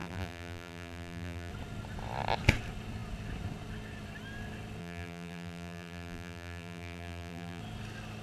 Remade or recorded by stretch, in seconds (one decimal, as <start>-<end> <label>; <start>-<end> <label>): 0.0-1.5 remade; 1.5-4.8 recorded; 4.8-7.6 remade; 7.6-8.2 recorded